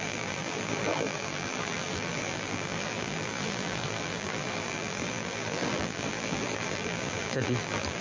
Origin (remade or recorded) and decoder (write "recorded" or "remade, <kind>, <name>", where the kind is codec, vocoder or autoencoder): remade, vocoder, BigVGAN v2